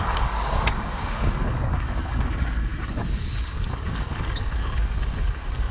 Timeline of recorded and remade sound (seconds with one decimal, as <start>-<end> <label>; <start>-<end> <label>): 0.0-5.7 remade

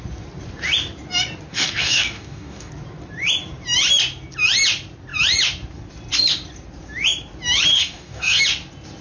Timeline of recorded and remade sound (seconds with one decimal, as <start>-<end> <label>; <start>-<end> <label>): 0.0-1.5 recorded; 1.5-2.7 remade; 2.7-7.7 recorded; 7.7-8.4 remade; 8.4-9.0 recorded

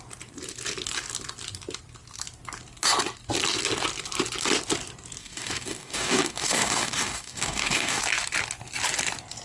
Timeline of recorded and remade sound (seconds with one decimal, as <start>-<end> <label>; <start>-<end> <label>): 0.0-5.2 recorded; 5.2-8.0 remade; 8.0-9.4 recorded

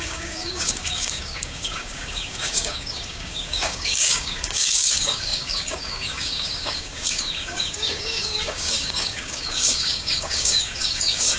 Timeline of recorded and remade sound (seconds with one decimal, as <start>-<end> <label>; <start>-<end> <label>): 0.0-11.4 remade

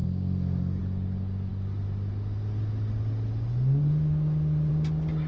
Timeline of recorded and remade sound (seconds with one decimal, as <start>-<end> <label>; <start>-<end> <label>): 0.0-0.8 remade; 0.8-5.3 recorded

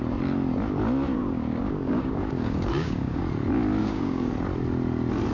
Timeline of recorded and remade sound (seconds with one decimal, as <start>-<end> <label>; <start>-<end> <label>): 0.0-1.2 recorded; 1.2-3.2 remade; 3.2-3.8 recorded; 3.8-4.3 remade; 4.3-5.3 recorded